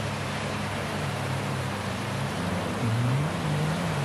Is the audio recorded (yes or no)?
no